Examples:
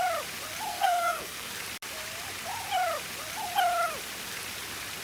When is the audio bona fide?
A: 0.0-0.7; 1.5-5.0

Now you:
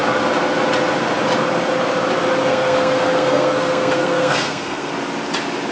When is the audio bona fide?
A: 0.0-2.5; 4.9-5.7

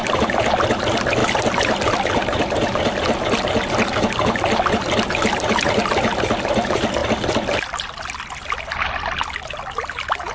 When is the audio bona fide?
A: 0.0-10.3